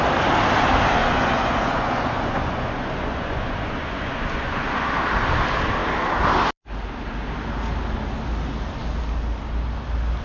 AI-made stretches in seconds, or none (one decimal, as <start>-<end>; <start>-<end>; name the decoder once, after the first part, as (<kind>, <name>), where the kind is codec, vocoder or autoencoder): 1.0-4.9 (vocoder, Vocos)